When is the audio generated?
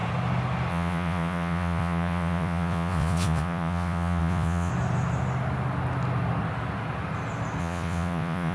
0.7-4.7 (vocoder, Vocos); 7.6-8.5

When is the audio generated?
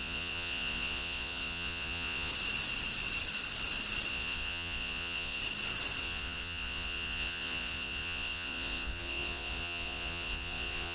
0.0-2.3 (vocoder, Vocos); 4.1-5.4; 6.0-10.9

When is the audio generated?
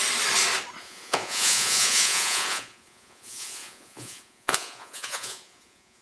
0.8-6.0 (vocoder, Vocos)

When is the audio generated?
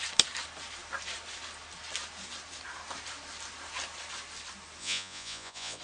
4.8-5.8 (vocoder, Vocos)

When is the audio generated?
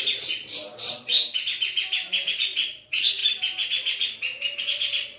0.0-1.1 (vocoder, Vocos); 2.3-3.2; 4.6-5.2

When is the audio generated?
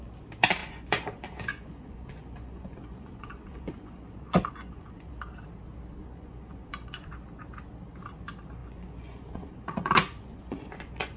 0.6-5.1 (vocoder, Vocos); 6.0-7.1; 8.6-11.2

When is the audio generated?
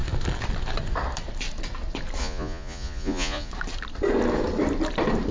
2.2-3.5 (vocoder, Vocos)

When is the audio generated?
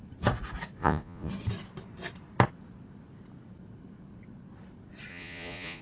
0.8-1.3 (vocoder, Vocos); 5.1-5.8